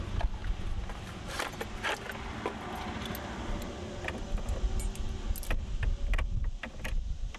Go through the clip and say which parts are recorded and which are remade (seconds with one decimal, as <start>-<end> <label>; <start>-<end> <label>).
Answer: 0.0-7.4 recorded